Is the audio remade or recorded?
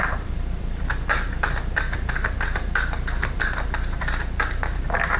remade